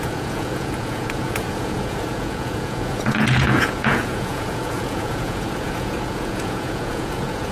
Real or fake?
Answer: fake